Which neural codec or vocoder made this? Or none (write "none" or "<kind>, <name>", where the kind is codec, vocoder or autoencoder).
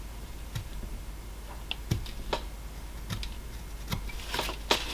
none